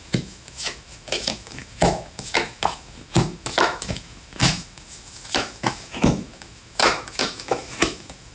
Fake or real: fake